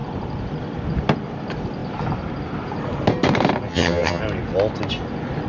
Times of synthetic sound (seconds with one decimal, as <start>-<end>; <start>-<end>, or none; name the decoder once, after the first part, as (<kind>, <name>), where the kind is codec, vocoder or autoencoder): 3.7-4.2 (vocoder, HiFi-GAN)